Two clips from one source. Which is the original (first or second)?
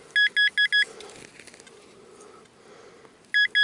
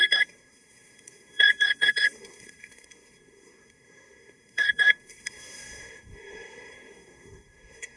first